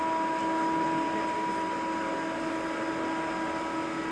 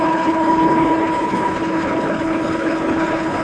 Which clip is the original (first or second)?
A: first